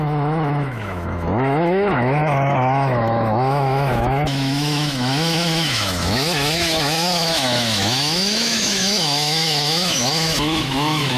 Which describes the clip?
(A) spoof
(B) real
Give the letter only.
A